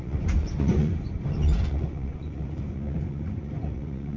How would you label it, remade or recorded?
remade